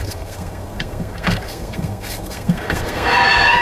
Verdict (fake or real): fake